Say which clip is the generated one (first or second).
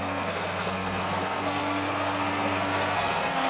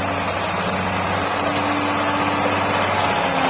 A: first